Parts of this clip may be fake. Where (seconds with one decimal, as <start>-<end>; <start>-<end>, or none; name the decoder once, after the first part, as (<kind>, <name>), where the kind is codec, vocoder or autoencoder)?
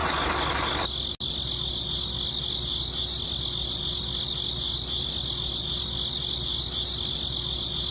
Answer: none